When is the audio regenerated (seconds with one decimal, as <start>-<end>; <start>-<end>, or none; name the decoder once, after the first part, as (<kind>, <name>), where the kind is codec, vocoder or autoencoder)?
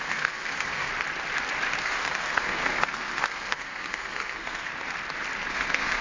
0.0-0.9 (codec, SNAC); 1.8-4.7; 5.5-6.0